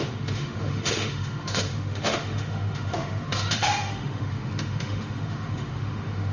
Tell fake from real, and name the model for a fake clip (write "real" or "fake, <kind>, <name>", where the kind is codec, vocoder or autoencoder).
fake, autoencoder, DAC-VAE